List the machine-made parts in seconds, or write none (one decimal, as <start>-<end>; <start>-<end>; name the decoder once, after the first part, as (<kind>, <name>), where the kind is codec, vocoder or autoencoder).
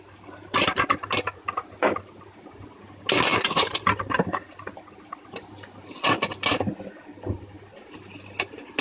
none